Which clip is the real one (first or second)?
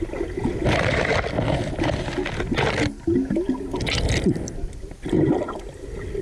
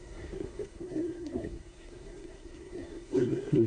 first